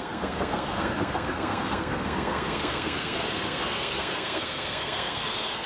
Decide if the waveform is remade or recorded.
remade